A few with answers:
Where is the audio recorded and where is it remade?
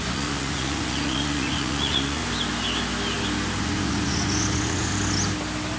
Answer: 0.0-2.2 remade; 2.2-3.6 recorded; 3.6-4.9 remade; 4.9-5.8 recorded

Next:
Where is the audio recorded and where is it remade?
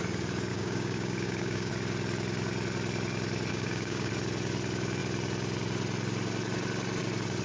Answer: 0.0-0.5 recorded; 0.5-1.7 remade; 1.7-3.5 recorded; 3.5-4.1 remade; 4.1-7.4 recorded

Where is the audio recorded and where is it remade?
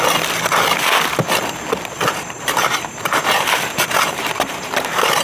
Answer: 0.0-2.1 recorded; 2.1-5.2 remade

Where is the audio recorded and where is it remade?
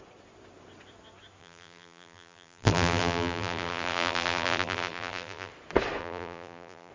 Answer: 0.0-1.4 recorded; 1.4-5.5 remade; 5.5-6.0 recorded; 6.0-6.9 remade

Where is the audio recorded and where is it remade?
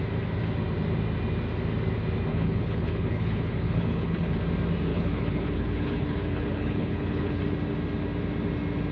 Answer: 0.0-2.3 recorded; 2.3-4.4 remade; 4.4-4.9 recorded; 4.9-7.4 remade; 7.4-8.9 recorded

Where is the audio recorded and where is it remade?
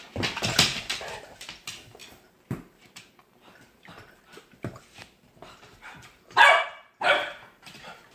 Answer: 0.0-2.0 recorded; 2.0-4.8 remade; 4.8-5.7 recorded; 5.7-8.1 remade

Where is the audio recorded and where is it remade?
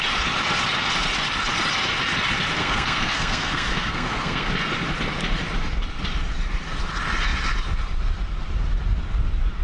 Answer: 0.0-2.6 recorded; 2.6-4.5 remade; 4.5-9.6 recorded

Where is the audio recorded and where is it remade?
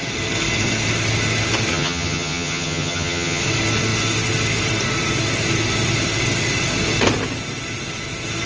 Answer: 0.0-1.7 recorded; 1.7-3.4 remade; 3.4-8.5 recorded